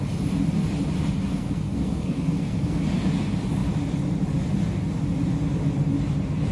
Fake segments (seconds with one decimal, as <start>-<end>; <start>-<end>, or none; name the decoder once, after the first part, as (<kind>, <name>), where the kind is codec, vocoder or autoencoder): 1.3-2.8 (codec, SNAC)